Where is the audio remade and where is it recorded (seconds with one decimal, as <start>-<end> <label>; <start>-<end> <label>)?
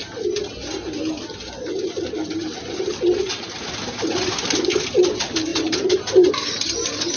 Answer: 0.0-5.5 recorded; 5.5-6.3 remade; 6.3-7.2 recorded